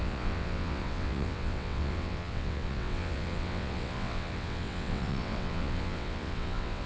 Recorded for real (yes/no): no